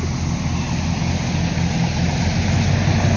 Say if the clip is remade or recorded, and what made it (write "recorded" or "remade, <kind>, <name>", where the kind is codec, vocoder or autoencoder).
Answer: recorded